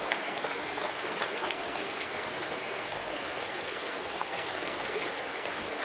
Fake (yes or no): yes